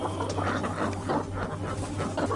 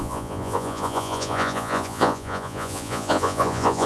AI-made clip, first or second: second